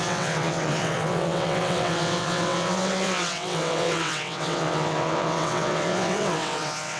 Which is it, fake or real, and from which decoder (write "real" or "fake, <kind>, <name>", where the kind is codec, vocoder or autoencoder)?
fake, vocoder, WaveNeXt